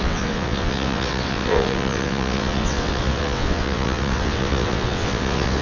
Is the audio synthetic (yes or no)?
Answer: yes